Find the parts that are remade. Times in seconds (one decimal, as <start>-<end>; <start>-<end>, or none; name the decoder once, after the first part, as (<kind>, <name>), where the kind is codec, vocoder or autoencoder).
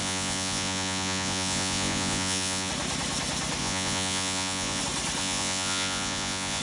0.0-2.7 (vocoder, Vocos); 3.6-4.8; 5.2-6.6